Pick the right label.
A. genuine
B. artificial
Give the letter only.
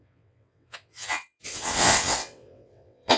B